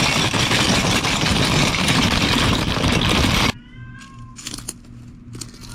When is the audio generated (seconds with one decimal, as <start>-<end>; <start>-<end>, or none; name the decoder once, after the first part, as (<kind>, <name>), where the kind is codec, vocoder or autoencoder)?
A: 1.3-3.6 (vocoder, BigVGAN v2)